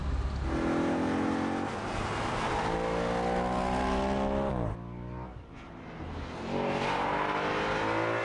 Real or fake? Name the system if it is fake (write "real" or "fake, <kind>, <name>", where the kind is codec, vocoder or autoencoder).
real